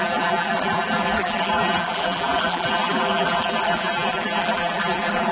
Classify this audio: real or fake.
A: fake